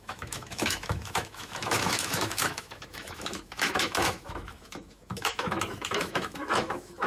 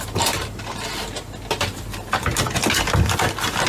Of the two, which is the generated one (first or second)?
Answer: first